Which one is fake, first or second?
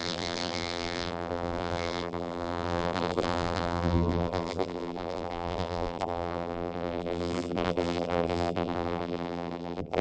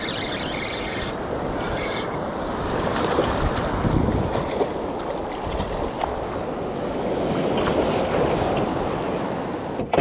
first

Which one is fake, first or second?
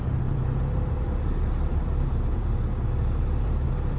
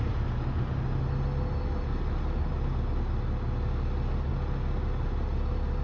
first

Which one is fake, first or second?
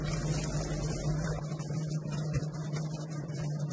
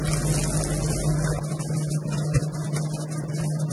first